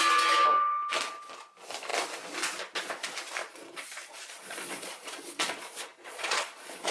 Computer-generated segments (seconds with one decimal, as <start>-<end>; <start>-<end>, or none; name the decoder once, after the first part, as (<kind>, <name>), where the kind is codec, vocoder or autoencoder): 3.4-6.9 (vocoder, Vocos)